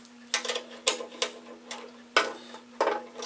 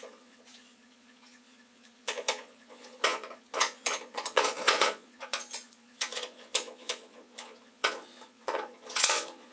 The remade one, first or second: second